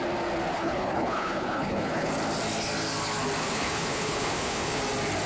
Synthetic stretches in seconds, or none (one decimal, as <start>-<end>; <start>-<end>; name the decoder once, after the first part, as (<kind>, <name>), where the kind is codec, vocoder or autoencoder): 0.5-2.1 (codec, HILCodec); 3.4-4.8